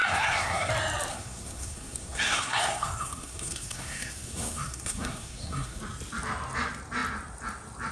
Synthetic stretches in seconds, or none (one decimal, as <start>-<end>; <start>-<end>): 0.0-0.7; 1.1-5.8